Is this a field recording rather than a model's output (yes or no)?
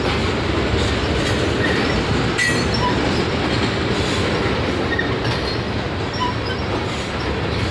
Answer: yes